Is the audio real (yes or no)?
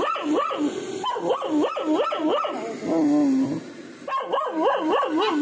yes